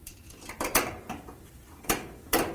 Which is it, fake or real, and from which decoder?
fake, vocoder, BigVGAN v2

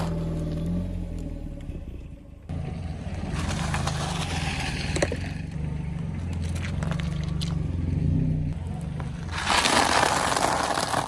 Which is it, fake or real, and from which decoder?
real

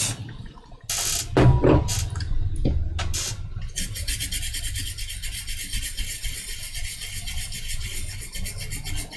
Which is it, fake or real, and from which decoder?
real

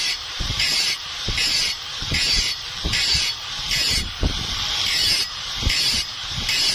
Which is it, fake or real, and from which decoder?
fake, vocoder, BigVGAN v2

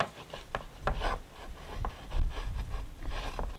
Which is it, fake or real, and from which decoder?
real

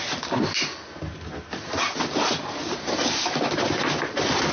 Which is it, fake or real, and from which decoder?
real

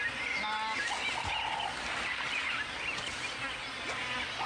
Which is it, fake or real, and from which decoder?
real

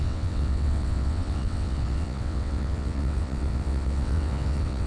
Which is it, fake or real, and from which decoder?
fake, vocoder, WaveNeXt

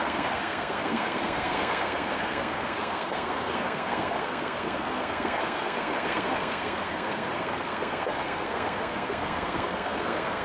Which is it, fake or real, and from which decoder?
fake, codec, SNAC